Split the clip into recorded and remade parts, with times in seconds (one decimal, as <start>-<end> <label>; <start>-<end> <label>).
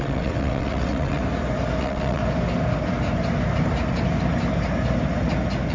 0.0-1.2 remade; 1.2-1.8 recorded; 1.8-2.2 remade; 2.2-5.7 recorded